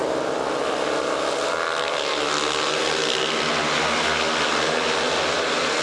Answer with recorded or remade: recorded